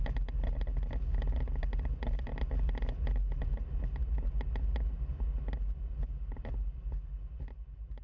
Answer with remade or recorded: recorded